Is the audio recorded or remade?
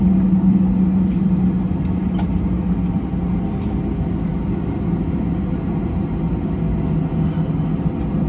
recorded